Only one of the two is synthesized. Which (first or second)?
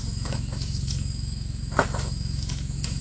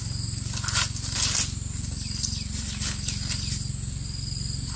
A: first